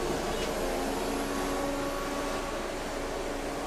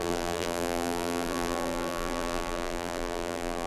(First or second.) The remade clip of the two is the second